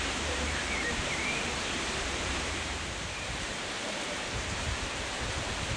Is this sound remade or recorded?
remade